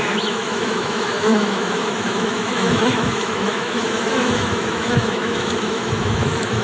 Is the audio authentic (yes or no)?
no